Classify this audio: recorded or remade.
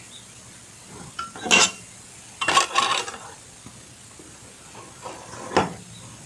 recorded